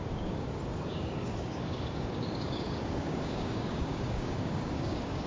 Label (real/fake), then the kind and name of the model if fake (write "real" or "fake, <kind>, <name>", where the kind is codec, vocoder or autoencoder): fake, codec, DAC